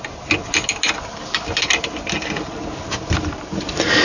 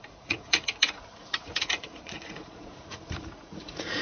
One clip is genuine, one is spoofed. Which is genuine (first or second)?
first